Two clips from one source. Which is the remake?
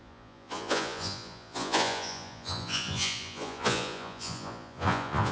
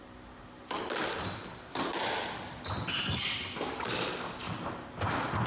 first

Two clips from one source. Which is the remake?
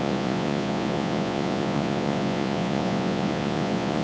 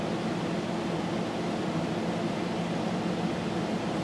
first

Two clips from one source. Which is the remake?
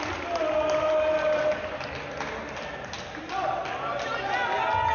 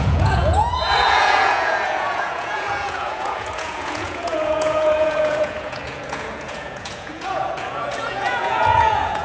second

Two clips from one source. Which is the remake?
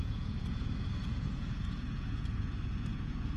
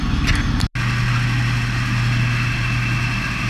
first